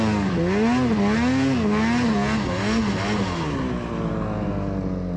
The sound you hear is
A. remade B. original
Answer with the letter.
B